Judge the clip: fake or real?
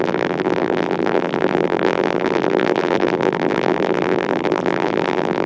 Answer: fake